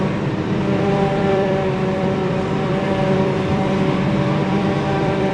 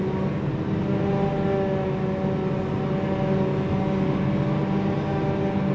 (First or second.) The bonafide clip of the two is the second